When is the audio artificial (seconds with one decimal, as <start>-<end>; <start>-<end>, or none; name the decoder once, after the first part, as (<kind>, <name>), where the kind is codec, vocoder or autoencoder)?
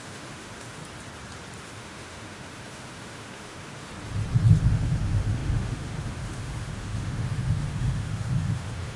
0.0-0.8 (autoencoder, DAC-VAE); 1.6-3.9; 4.6-9.0